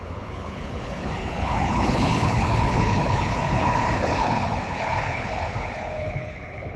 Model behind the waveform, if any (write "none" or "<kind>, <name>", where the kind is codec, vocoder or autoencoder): codec, HILCodec